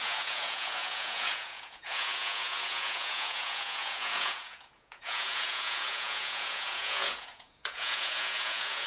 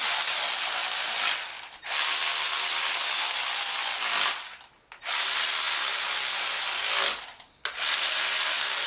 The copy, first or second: first